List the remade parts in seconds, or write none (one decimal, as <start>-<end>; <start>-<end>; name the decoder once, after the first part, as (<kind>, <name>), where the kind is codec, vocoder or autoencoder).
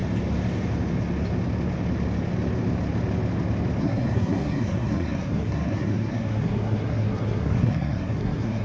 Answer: 3.8-8.6 (codec, SNAC)